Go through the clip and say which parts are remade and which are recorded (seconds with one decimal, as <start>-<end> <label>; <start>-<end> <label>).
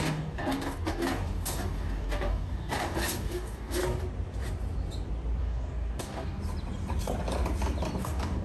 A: 0.0-3.8 remade; 3.8-5.4 recorded; 5.4-6.4 remade; 6.4-8.0 recorded; 8.0-8.4 remade